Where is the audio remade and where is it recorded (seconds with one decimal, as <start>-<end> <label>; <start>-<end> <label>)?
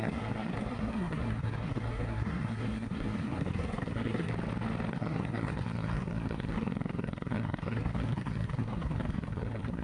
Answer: 0.0-4.3 remade; 4.3-4.9 recorded; 4.9-9.8 remade